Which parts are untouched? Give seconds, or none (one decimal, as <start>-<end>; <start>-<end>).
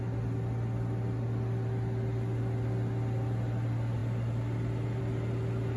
0.0-5.8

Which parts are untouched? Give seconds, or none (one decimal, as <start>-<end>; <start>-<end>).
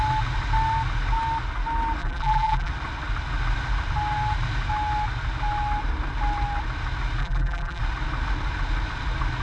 0.0-2.0; 2.7-7.2; 7.8-9.4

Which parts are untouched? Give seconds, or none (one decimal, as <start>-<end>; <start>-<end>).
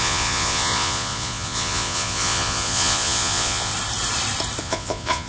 3.7-4.6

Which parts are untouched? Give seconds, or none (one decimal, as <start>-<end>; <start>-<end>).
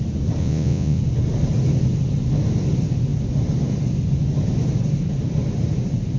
0.0-0.4; 1.0-6.2